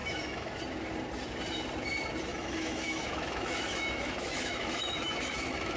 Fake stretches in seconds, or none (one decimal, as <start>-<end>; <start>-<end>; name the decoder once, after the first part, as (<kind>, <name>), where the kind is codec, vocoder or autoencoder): 0.0-0.6 (autoencoder, DAC-VAE); 2.3-5.8